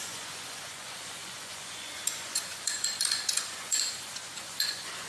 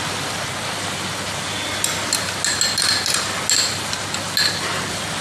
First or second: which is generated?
first